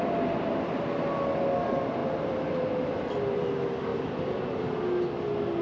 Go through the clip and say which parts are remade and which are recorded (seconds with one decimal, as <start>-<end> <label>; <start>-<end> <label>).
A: 0.0-2.0 recorded; 2.0-3.5 remade; 3.5-3.9 recorded; 3.9-4.5 remade; 4.5-5.6 recorded